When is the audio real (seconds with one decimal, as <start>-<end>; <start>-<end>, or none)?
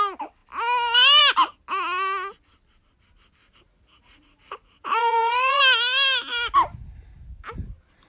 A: 0.0-3.4; 5.6-8.1